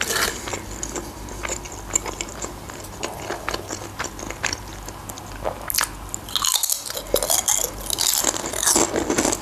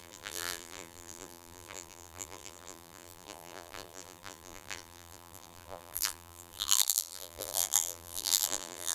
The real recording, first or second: first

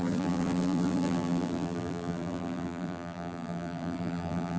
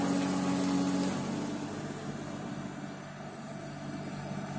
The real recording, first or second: second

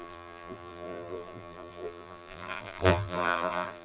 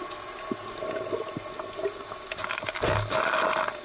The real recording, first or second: second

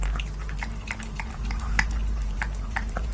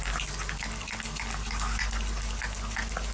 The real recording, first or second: second